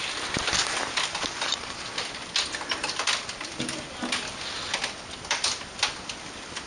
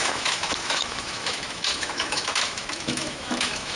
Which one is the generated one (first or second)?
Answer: second